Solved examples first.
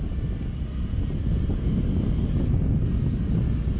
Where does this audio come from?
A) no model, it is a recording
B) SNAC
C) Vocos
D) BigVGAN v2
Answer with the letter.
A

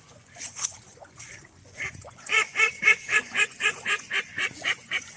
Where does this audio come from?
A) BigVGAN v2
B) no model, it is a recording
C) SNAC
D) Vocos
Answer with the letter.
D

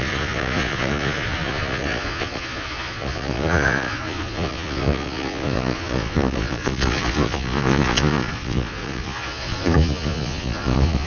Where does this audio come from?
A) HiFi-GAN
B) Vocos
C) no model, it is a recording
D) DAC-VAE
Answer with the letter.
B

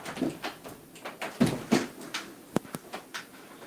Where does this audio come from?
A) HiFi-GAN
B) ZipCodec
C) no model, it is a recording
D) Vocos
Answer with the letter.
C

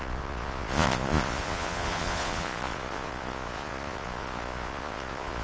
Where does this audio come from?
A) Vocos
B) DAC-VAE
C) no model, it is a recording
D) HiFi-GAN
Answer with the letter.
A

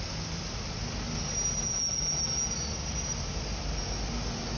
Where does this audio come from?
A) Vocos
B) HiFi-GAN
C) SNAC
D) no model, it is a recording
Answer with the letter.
D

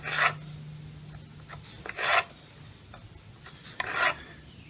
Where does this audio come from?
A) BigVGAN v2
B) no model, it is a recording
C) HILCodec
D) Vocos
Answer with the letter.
B